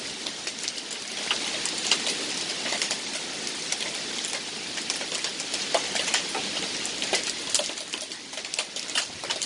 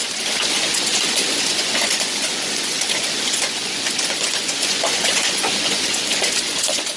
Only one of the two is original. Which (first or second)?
first